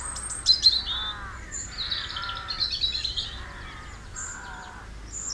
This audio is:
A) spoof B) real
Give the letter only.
B